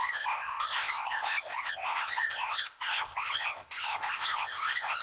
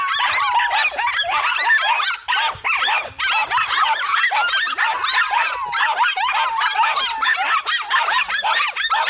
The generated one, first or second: first